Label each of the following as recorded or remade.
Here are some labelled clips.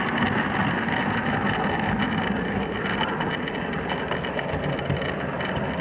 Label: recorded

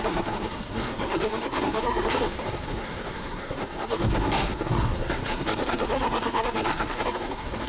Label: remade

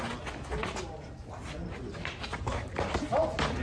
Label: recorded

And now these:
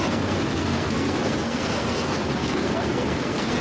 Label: remade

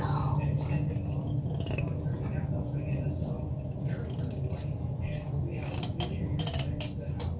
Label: recorded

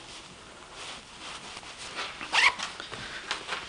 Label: recorded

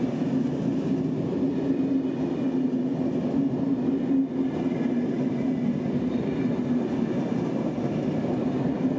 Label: recorded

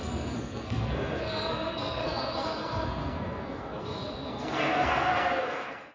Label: remade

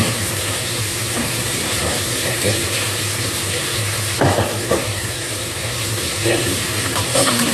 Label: remade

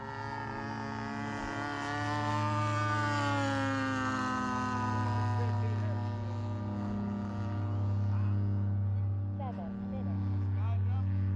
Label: recorded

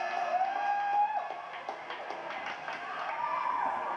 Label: recorded